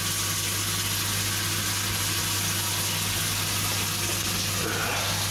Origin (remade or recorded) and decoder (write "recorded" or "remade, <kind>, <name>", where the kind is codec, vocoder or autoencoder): recorded